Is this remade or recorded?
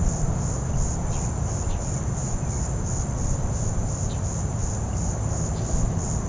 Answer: recorded